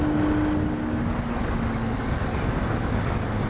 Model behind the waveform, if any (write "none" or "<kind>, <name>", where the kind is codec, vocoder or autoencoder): none